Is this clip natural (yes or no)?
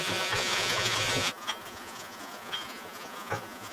no